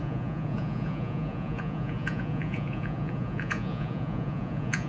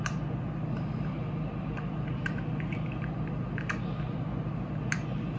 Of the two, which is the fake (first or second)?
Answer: first